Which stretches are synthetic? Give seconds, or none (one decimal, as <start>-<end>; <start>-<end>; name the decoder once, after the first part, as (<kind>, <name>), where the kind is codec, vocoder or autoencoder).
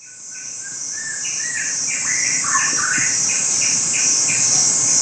0.6-3.6 (vocoder, BigVGAN v2)